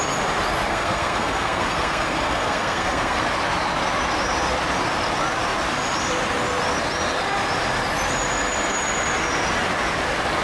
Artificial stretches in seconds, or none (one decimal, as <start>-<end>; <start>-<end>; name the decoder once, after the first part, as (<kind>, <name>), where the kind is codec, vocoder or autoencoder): 0.7-3.2 (codec, SNAC)

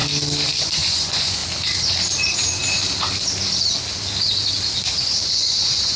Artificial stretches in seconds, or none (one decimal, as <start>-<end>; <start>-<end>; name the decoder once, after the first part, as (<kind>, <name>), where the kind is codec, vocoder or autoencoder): 0.6-1.4 (vocoder, Vocos); 5.0-6.0

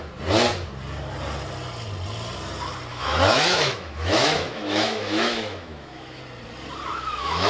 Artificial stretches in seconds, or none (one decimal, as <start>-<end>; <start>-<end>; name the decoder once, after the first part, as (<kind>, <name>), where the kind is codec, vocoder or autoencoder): 2.9-6.2 (autoencoder, DAC-VAE); 6.9-7.5

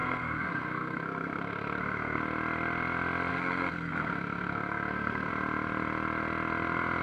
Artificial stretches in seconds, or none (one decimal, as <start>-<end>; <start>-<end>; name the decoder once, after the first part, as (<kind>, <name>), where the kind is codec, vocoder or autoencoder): 0.0-2.2 (codec, SNAC); 3.3-5.3